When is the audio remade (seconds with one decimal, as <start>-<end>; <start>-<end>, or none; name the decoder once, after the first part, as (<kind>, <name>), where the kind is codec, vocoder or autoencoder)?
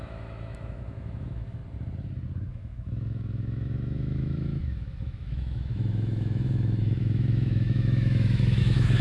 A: 0.0-1.6 (autoencoder, DAC-VAE); 2.5-9.0